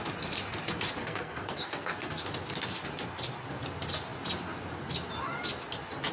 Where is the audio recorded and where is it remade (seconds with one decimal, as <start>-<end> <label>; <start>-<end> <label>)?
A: 0.0-1.0 recorded; 1.0-2.2 remade; 2.2-6.1 recorded